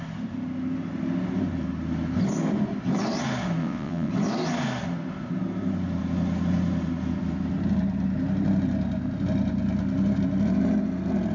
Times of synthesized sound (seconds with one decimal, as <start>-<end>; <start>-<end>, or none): 3.6-4.1